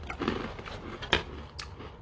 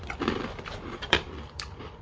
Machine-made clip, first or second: second